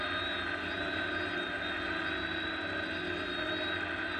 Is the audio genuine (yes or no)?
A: yes